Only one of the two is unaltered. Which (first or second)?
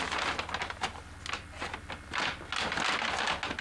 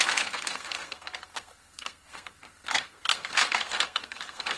first